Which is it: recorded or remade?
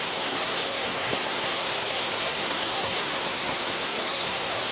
remade